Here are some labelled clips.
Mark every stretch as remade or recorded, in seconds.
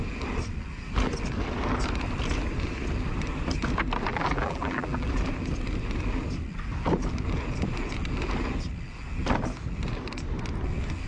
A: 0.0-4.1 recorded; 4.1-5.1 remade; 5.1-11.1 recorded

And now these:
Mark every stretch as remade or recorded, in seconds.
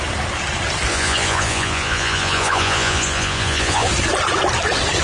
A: 0.0-0.9 recorded; 0.9-3.9 remade; 3.9-5.0 recorded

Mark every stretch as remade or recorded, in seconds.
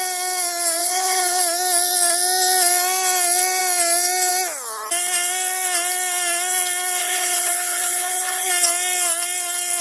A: 0.0-0.8 recorded; 0.8-1.4 remade; 1.4-7.0 recorded; 7.0-8.5 remade; 8.5-9.8 recorded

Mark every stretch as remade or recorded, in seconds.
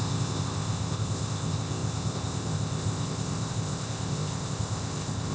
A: 0.0-5.3 remade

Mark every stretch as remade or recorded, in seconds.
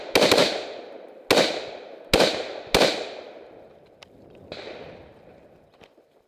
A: 0.0-6.3 recorded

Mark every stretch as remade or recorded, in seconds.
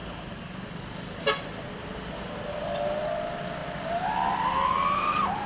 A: 0.0-5.5 recorded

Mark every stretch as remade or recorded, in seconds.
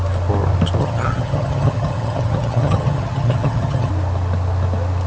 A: 0.0-0.8 recorded; 0.8-3.9 remade; 3.9-5.1 recorded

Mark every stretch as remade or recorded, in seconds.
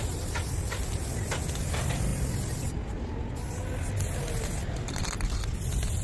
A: 0.0-6.0 recorded